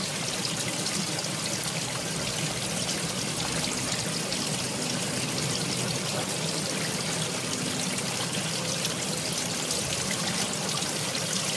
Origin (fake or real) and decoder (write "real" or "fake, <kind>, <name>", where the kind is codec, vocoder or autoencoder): real